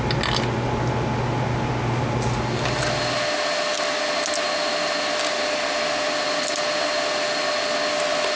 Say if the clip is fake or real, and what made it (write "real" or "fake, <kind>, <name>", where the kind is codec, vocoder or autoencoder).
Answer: real